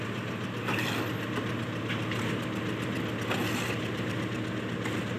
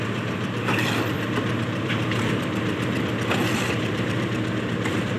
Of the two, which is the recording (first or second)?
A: first